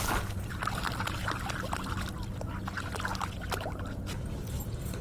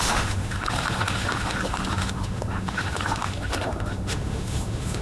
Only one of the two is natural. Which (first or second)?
first